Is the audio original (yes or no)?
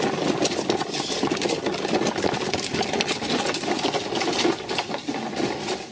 yes